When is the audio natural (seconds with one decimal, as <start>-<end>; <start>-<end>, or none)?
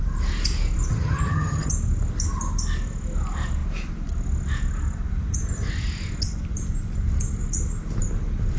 0.0-0.9; 1.7-8.6